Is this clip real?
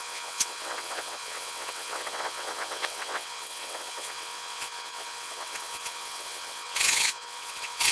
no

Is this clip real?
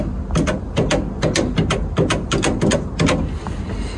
yes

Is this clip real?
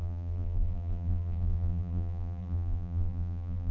no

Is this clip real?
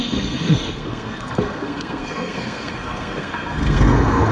no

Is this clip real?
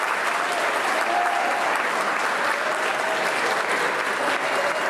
yes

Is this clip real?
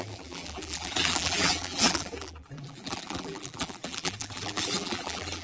no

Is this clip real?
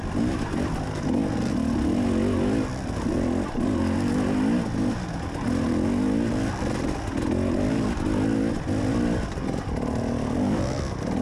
yes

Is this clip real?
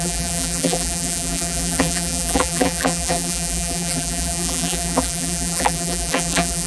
no